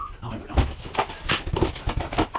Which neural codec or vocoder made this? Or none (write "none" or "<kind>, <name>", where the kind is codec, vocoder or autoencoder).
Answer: none